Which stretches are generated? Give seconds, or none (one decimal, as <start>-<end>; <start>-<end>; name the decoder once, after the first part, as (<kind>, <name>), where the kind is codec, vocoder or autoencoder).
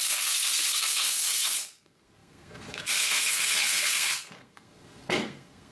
0.0-5.7 (codec, SNAC)